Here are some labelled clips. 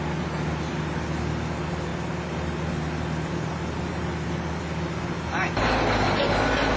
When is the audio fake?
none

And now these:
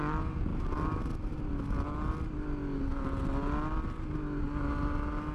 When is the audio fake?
none

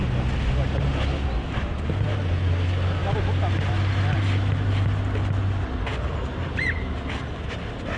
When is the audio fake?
none

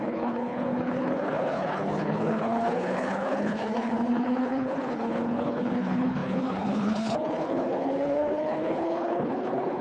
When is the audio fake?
0.0-9.8 (codec, HILCodec)

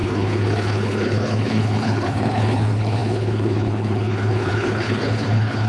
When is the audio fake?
0.0-5.7 (codec, HILCodec)

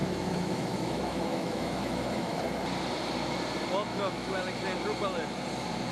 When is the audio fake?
0.0-2.4 (autoencoder, DAC-VAE); 3.9-4.4

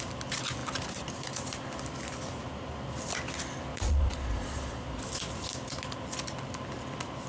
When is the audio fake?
3.7-5.0 (vocoder, Vocos)

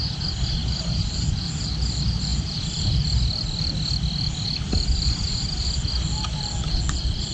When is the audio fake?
0.6-1.7 (vocoder, BigVGAN v2)